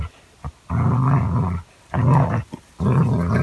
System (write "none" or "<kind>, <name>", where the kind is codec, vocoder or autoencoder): none